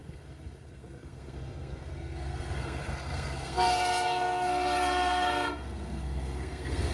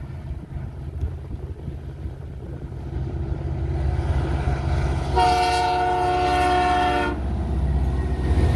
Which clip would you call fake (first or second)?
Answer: first